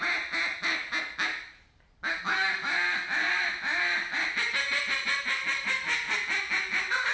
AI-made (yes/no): no